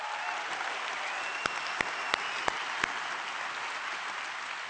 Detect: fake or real real